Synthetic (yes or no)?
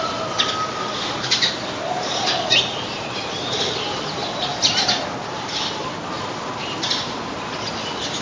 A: no